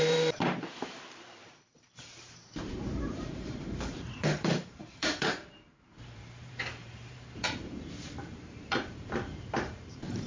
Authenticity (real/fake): fake